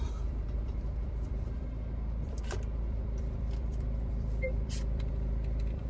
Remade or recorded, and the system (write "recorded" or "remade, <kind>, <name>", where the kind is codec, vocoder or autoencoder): remade, vocoder, BigVGAN v2